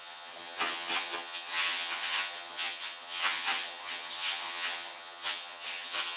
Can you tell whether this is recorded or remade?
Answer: remade